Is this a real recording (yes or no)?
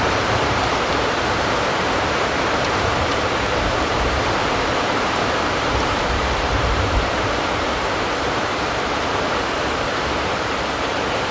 no